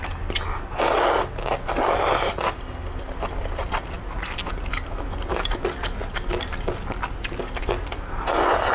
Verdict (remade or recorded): recorded